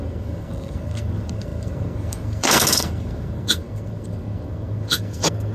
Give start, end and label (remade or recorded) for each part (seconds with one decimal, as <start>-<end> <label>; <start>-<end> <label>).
0.0-5.5 remade